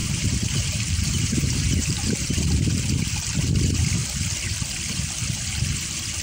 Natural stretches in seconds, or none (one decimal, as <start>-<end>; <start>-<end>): 2.3-6.2